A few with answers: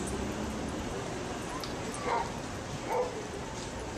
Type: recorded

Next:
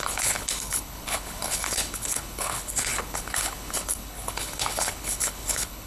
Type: remade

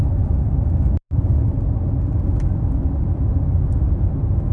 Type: recorded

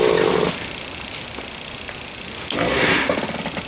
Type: recorded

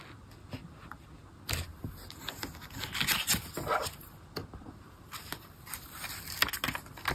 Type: recorded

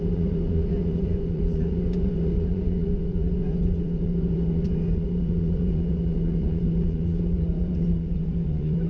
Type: remade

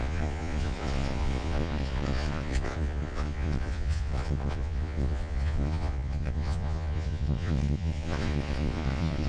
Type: remade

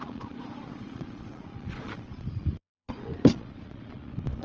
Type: remade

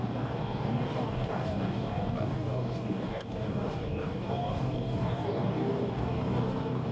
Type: remade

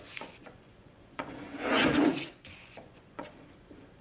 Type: remade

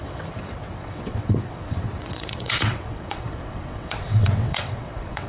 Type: remade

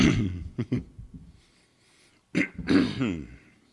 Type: recorded